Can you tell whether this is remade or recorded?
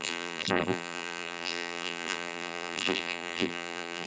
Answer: remade